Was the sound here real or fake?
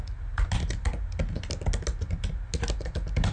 real